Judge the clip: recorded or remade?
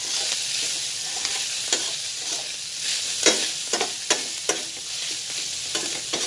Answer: recorded